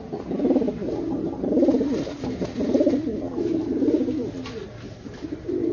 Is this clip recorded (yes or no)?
yes